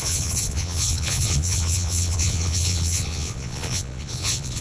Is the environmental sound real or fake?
fake